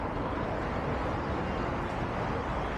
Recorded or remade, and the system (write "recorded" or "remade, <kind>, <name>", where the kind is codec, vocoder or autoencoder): recorded